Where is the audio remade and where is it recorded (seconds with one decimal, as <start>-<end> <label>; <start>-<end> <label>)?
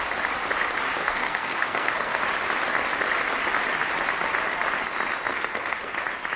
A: 0.0-1.0 recorded; 1.0-2.2 remade; 2.2-5.3 recorded; 5.3-5.9 remade; 5.9-6.4 recorded